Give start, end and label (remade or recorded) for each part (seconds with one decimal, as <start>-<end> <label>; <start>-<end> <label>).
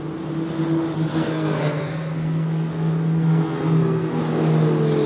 0.0-1.1 recorded; 1.1-4.2 remade; 4.2-5.1 recorded